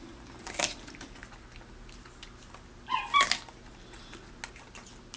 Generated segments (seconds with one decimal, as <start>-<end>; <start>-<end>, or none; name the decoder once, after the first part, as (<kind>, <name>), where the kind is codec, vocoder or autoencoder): none